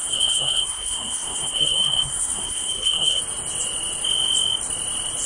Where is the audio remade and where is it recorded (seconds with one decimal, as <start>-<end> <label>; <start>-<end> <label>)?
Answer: 0.0-3.2 remade; 3.2-5.3 recorded